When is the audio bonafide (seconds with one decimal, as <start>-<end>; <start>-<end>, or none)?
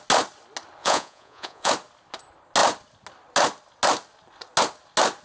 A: 0.0-0.8; 1.7-5.2